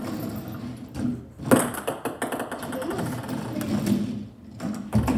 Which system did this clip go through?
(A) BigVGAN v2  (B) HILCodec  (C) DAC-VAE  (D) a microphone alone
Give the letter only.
D